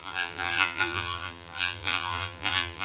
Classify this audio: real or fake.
fake